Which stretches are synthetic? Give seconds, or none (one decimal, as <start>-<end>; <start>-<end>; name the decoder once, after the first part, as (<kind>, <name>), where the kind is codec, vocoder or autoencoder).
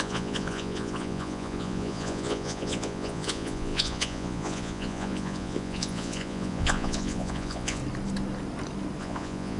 0.0-7.8 (vocoder, Vocos); 9.0-9.6